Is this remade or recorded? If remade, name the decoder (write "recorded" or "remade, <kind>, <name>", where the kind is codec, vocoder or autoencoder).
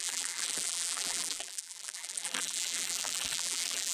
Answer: remade, vocoder, BigVGAN v2